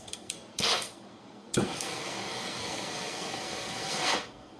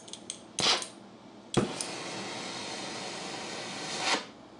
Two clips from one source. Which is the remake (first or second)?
first